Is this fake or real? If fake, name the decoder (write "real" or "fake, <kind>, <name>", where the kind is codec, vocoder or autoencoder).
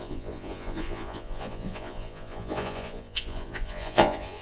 fake, vocoder, Vocos